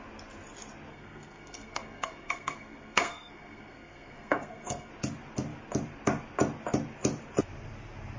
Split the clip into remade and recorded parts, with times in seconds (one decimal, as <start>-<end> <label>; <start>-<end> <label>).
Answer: 0.0-0.9 recorded; 0.9-4.9 remade; 4.9-8.2 recorded